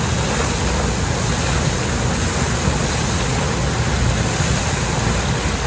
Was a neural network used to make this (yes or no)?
no